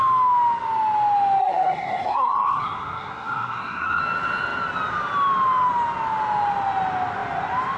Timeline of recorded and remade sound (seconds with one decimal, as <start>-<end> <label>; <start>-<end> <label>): 0.0-1.4 recorded; 1.4-4.0 remade; 4.0-7.8 recorded